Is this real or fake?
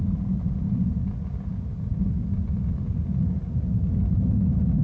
real